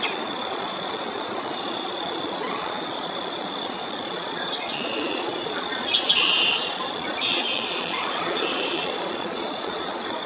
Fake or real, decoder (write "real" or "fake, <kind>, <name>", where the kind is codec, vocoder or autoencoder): fake, vocoder, Vocos